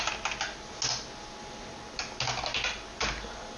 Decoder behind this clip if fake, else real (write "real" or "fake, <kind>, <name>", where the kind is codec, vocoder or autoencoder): real